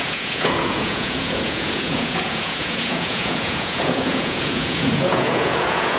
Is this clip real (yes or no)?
no